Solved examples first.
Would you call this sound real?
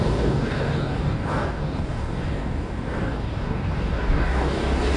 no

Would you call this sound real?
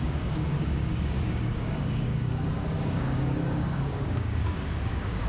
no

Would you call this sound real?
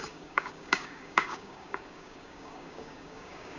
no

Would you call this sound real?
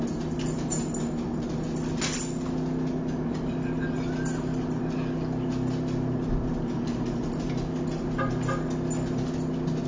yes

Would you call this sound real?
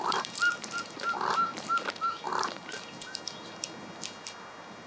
yes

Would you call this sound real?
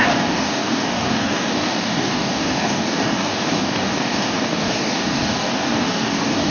no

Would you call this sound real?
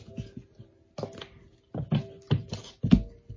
yes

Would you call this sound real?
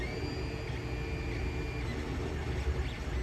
yes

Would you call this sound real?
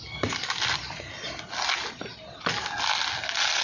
yes